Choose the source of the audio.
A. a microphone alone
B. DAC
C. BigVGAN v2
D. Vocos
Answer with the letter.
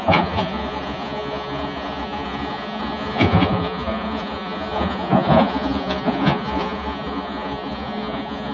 D